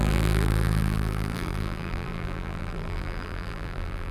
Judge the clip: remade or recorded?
remade